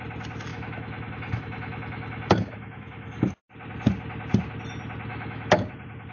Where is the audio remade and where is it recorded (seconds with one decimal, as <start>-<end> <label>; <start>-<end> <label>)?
0.0-0.5 recorded; 0.5-3.3 remade; 3.3-5.1 recorded; 5.1-5.6 remade; 5.6-6.1 recorded